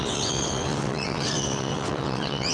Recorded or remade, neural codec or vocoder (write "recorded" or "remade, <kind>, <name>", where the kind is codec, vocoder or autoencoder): remade, vocoder, WaveNeXt